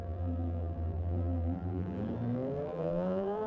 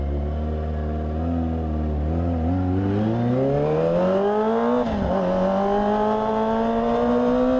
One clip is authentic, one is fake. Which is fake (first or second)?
first